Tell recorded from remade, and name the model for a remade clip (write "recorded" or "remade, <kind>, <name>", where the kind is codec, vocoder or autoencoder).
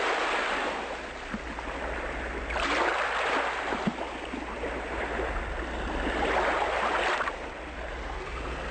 recorded